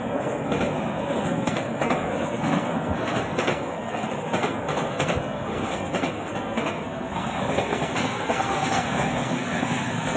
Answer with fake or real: fake